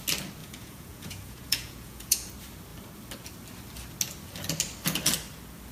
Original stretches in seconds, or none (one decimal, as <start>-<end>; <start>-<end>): 0.0-0.4; 2.3-5.7